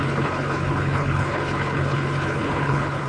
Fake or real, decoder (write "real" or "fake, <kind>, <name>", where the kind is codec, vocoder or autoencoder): fake, codec, HILCodec